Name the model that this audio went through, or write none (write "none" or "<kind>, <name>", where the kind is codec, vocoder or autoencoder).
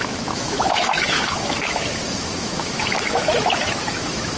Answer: autoencoder, DAC-VAE